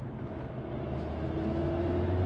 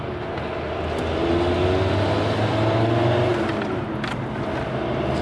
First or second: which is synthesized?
first